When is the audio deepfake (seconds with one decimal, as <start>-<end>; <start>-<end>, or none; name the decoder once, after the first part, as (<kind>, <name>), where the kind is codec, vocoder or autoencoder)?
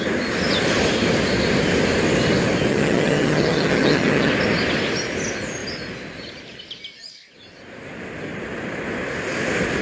2.7-4.3 (vocoder, HiFi-GAN)